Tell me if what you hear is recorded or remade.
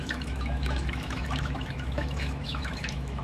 remade